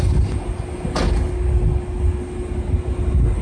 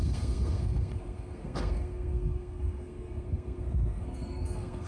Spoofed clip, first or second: second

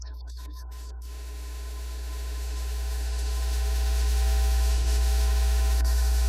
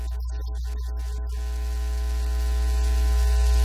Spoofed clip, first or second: first